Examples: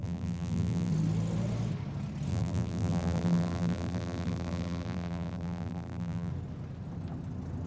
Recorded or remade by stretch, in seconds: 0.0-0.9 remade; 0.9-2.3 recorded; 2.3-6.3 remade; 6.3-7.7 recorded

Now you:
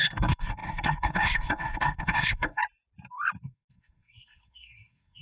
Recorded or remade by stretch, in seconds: 0.0-2.6 remade; 2.6-3.4 recorded; 3.4-5.2 remade

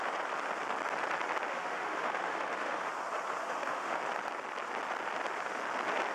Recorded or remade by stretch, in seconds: 0.0-1.5 recorded; 1.5-2.9 remade; 2.9-3.4 recorded; 3.4-4.0 remade; 4.0-6.1 recorded

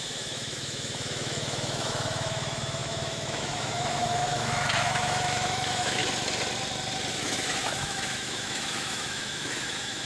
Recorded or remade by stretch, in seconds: 0.0-6.0 remade; 6.0-7.1 recorded; 7.1-10.1 remade

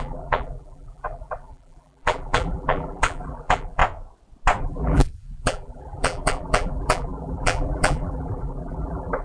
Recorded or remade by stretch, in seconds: 0.0-3.8 remade; 3.8-4.6 recorded; 4.6-9.2 remade

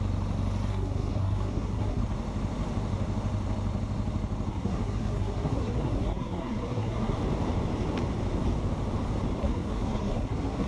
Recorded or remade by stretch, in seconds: 0.0-0.7 recorded; 0.7-2.0 remade; 2.0-4.5 recorded; 4.5-7.2 remade; 7.2-9.4 recorded; 9.4-10.7 remade

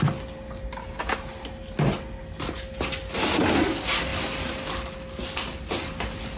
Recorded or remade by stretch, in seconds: 0.0-6.4 recorded

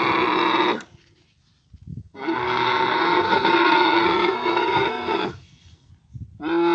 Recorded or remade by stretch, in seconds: 0.0-1.9 recorded; 1.9-5.9 remade; 5.9-6.7 recorded